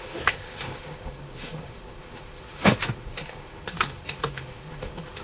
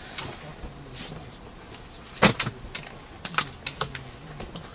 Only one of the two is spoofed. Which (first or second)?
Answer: first